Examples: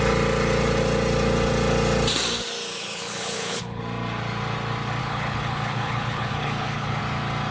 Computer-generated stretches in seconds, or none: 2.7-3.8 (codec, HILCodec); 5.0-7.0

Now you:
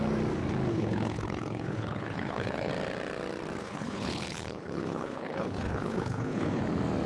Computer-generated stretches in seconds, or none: 0.7-2.7 (codec, HILCodec); 3.6-6.6